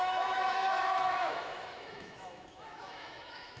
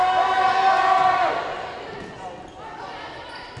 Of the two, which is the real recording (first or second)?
second